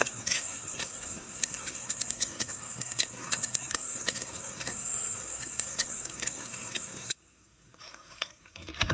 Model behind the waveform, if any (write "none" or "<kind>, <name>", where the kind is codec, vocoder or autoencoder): codec, SNAC